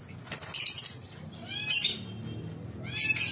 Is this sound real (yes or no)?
yes